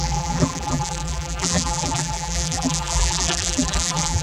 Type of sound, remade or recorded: remade